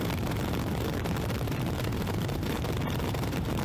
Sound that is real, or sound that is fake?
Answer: fake